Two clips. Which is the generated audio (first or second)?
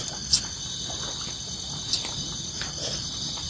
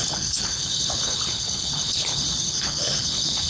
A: second